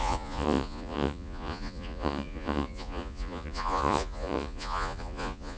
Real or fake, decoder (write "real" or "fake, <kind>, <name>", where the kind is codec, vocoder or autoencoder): fake, vocoder, Vocos